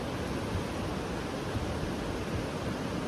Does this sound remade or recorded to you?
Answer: recorded